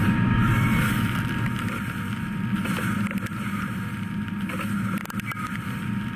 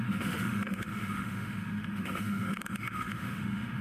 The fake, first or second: second